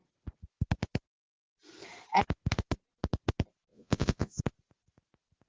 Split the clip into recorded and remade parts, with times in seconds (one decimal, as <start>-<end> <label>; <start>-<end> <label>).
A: 0.0-3.7 recorded; 3.7-4.4 remade; 4.4-5.5 recorded

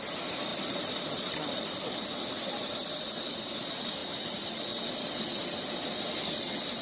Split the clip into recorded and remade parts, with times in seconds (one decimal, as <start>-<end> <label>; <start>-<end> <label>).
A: 0.0-6.8 recorded

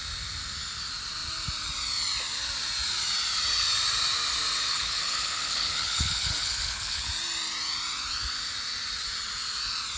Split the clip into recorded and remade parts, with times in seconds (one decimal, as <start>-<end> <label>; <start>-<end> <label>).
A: 0.0-4.7 recorded; 4.7-7.1 remade; 7.1-10.0 recorded

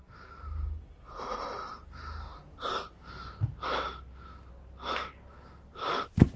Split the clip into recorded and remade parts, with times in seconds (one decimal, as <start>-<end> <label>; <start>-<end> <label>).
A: 0.0-6.4 recorded

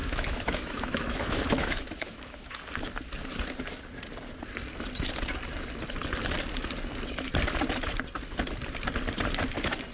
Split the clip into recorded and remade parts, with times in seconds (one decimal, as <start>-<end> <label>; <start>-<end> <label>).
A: 0.0-2.6 remade; 2.6-9.9 recorded